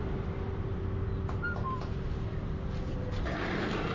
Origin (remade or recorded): recorded